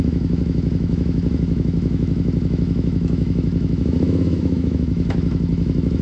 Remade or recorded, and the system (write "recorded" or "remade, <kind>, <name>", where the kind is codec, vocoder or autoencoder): remade, autoencoder, DAC-VAE